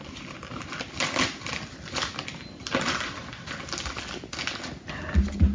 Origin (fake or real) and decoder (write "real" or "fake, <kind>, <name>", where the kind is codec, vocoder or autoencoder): real